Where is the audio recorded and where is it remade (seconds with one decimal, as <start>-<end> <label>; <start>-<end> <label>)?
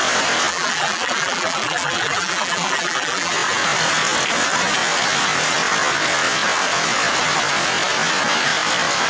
0.0-0.5 recorded; 0.5-3.3 remade; 3.3-9.1 recorded